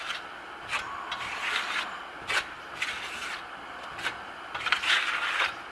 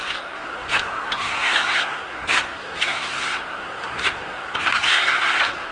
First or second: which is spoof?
second